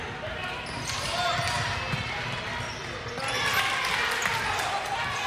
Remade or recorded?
recorded